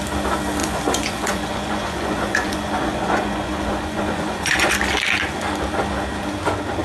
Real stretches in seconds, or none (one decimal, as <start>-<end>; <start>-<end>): 0.0-0.6; 4.7-6.8